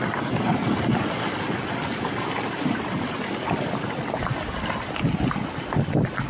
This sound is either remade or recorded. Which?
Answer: recorded